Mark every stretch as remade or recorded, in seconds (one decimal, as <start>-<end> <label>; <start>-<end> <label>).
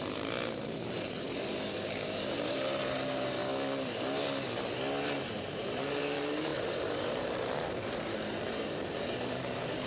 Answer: 0.0-3.4 remade; 3.4-5.2 recorded; 5.2-9.9 remade